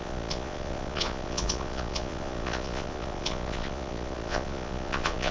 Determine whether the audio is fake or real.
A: fake